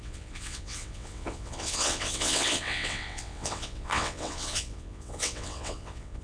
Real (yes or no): no